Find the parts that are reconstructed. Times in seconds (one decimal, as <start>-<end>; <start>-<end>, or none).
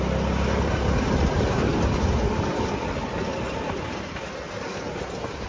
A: none